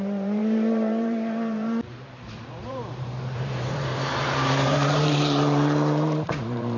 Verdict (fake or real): fake